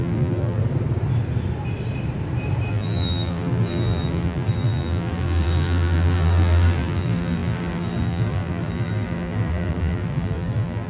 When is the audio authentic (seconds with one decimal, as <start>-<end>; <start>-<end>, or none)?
0.6-2.7